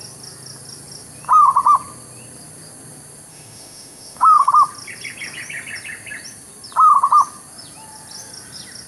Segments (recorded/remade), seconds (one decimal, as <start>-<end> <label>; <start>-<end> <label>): 0.0-3.3 recorded; 3.3-4.5 remade; 4.5-8.9 recorded